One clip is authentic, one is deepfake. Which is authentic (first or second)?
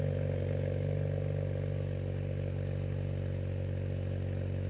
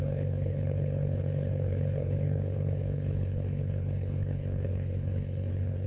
first